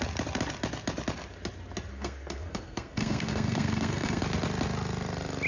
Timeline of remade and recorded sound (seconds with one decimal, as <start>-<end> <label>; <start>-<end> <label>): 0.0-1.9 recorded; 1.9-4.2 remade; 4.2-5.5 recorded